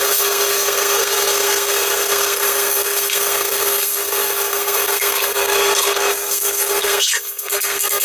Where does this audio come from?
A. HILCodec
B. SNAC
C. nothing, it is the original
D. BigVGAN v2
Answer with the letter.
B